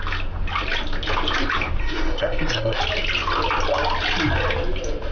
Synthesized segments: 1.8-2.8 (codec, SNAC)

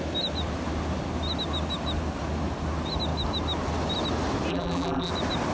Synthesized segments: 4.5-5.1 (vocoder, BigVGAN v2)

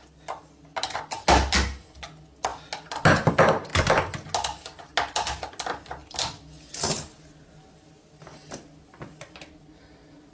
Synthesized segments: none

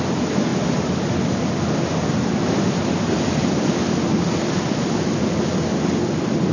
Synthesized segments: 5.5-6.5 (vocoder, BigVGAN v2)